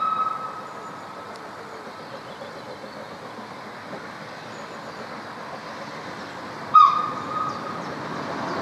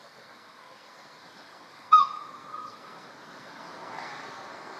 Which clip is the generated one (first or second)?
second